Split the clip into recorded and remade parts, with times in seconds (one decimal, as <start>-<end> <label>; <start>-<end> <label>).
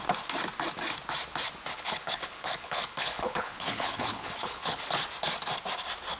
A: 0.0-1.7 recorded; 1.7-4.9 remade; 4.9-6.2 recorded